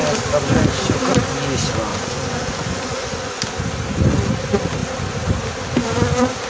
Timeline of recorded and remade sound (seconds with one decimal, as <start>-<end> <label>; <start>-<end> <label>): 0.0-1.9 recorded; 1.9-3.4 remade; 3.4-6.5 recorded